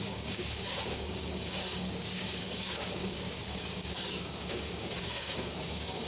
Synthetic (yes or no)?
yes